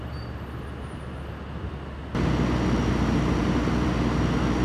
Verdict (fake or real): real